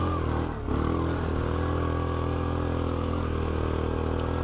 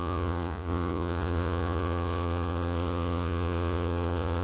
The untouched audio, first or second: first